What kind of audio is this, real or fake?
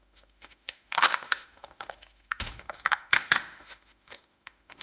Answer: fake